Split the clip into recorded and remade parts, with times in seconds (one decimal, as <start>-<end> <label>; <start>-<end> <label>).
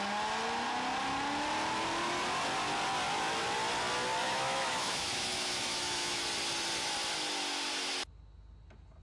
0.0-4.2 recorded; 4.2-6.2 remade; 6.2-9.0 recorded